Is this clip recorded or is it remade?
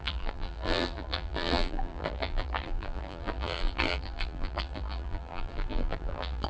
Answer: remade